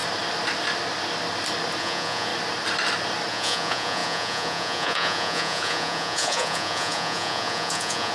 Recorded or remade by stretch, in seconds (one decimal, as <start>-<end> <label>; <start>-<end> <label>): 0.0-1.8 recorded; 1.8-2.3 remade; 2.3-3.3 recorded; 3.3-8.1 remade